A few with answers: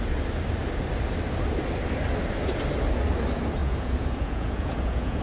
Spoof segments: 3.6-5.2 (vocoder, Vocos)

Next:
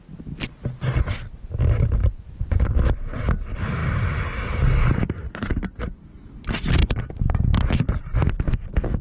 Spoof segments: 2.0-2.7 (vocoder, Vocos)

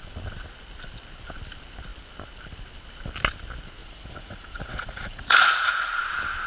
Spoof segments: 3.8-6.0 (vocoder, Vocos)